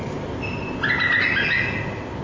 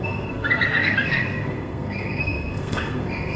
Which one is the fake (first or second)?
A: second